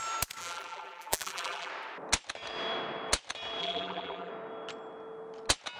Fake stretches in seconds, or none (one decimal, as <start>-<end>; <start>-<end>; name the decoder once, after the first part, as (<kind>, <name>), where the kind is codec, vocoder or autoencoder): 0.4-1.7 (vocoder, BigVGAN v2); 3.6-4.3